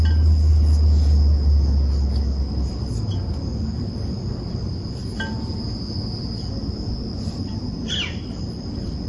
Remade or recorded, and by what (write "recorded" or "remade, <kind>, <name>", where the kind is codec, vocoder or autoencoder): recorded